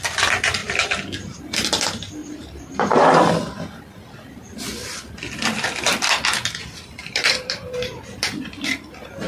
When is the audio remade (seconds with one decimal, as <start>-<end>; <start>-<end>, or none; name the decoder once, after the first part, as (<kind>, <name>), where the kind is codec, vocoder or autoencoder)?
0.6-1.4 (vocoder, BigVGAN v2); 2.2-3.2; 7.0-8.4